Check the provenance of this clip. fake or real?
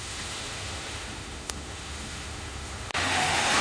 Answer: fake